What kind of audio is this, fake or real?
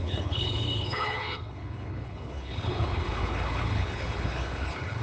fake